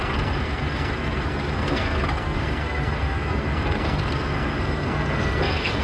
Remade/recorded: remade